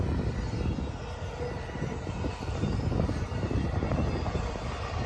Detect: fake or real real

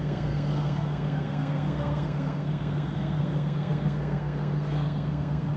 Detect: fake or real fake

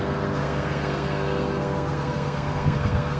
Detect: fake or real fake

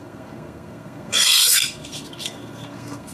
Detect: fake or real fake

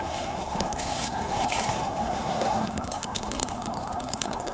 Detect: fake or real fake